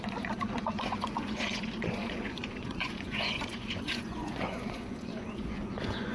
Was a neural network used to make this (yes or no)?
yes